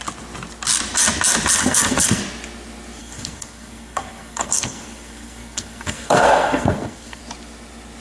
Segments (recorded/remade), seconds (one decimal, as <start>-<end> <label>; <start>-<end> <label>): 0.0-1.6 recorded; 1.6-2.2 remade; 2.2-3.0 recorded; 3.0-7.2 remade; 7.2-8.0 recorded